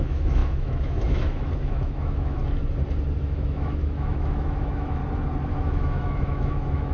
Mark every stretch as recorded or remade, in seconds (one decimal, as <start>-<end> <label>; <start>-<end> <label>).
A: 0.0-2.4 remade; 2.4-3.2 recorded; 3.2-5.0 remade; 5.0-5.5 recorded; 5.5-6.9 remade

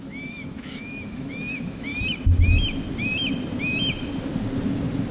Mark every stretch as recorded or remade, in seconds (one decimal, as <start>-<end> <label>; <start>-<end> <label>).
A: 0.0-1.9 remade; 1.9-5.1 recorded

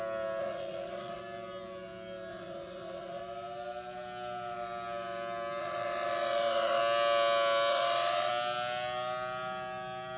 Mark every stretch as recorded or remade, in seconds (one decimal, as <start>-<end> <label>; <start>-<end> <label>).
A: 0.0-0.4 recorded; 0.4-1.2 remade; 1.2-2.3 recorded; 2.3-3.2 remade; 3.2-5.6 recorded; 5.6-6.8 remade; 6.8-7.7 recorded; 7.7-8.3 remade; 8.3-10.2 recorded

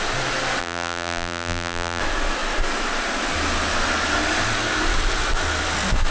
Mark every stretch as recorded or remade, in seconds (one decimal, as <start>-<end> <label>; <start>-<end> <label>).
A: 0.0-0.6 recorded; 0.6-2.0 remade; 2.0-6.1 recorded

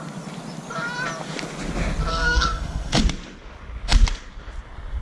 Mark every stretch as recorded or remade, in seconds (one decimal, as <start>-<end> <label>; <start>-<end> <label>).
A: 0.0-2.1 recorded; 2.1-3.0 remade; 3.0-5.0 recorded